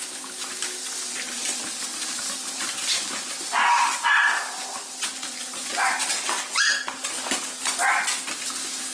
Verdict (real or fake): real